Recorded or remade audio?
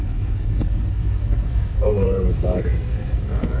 remade